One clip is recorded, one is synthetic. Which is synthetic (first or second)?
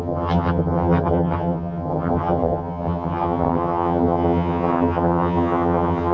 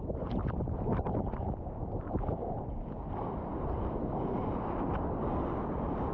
first